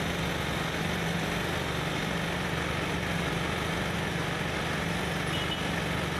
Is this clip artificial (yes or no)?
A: no